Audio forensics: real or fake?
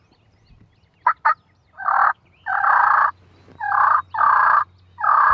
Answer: real